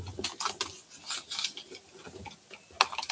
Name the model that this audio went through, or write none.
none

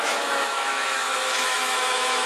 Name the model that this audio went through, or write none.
autoencoder, DAC-VAE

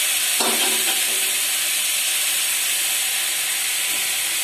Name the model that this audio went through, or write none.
none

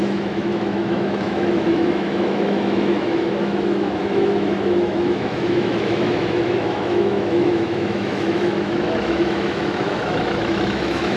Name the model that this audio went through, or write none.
autoencoder, DAC-VAE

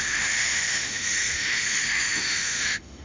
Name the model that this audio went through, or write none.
autoencoder, DAC-VAE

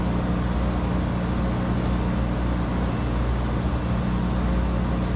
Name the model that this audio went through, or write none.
none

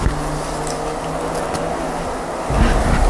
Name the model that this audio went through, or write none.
none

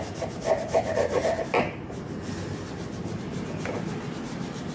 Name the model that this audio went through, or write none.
vocoder, BigVGAN v2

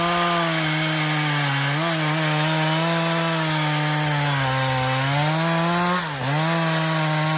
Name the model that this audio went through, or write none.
none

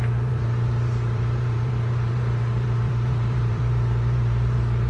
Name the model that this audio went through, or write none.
vocoder, BigVGAN v2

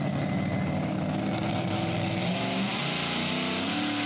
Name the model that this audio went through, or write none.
none